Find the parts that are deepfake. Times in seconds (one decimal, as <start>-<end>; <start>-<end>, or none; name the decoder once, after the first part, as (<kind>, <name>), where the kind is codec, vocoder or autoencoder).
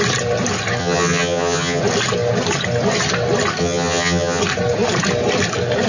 0.8-1.8 (vocoder, HiFi-GAN); 3.6-4.4